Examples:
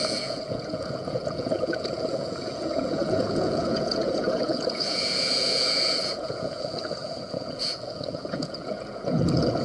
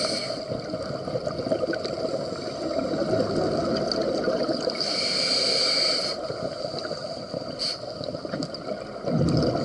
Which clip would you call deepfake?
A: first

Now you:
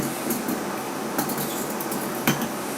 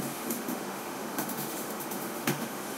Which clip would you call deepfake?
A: second